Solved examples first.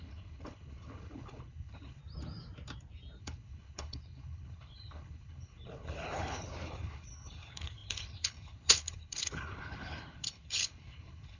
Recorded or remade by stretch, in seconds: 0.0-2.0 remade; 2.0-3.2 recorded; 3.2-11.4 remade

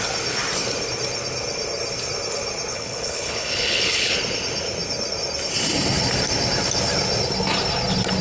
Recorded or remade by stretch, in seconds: 0.0-2.7 recorded; 2.7-4.1 remade; 4.1-8.2 recorded

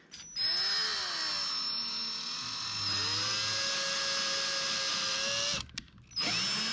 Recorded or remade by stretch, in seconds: 0.0-6.7 recorded

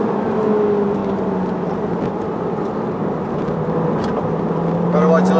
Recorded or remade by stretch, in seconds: 0.0-5.4 recorded

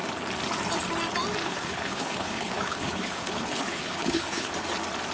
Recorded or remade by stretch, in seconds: 0.0-1.4 recorded; 1.4-4.5 remade; 4.5-5.1 recorded

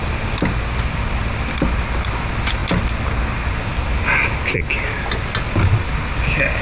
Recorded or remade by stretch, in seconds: 0.0-6.6 recorded